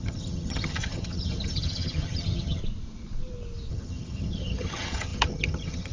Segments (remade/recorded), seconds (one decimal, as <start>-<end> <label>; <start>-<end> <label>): 0.0-2.6 remade; 2.6-3.7 recorded; 3.7-5.9 remade